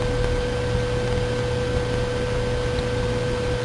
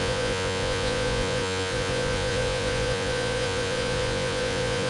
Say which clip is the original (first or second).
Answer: first